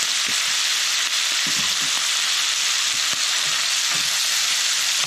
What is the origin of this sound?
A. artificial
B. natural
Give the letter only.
B